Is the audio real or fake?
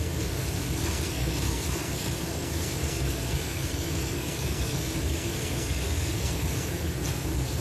fake